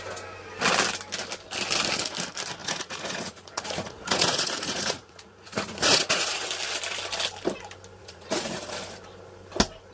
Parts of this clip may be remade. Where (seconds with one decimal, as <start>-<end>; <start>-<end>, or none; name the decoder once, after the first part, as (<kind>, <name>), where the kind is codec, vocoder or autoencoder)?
2.6-6.5 (vocoder, Vocos); 8.0-8.6